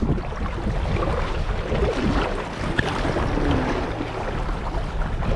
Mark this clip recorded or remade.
recorded